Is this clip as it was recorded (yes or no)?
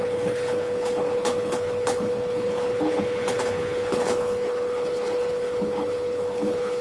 no